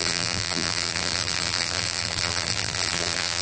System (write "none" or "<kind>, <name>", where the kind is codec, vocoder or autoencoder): vocoder, BigVGAN v2